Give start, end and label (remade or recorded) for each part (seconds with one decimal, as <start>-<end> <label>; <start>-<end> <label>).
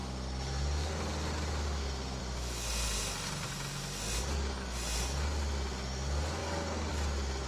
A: 0.0-6.4 recorded; 6.4-6.9 remade; 6.9-7.5 recorded